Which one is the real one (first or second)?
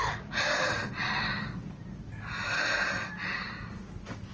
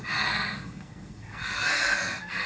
first